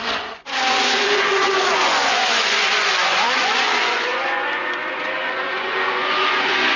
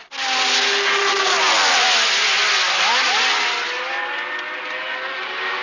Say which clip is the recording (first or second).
second